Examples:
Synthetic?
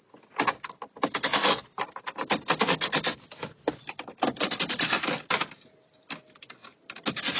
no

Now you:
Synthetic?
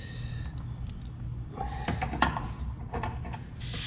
no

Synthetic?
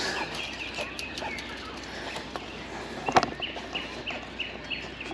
no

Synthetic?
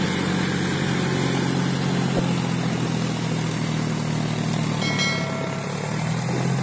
no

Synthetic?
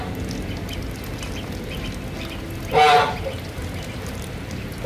no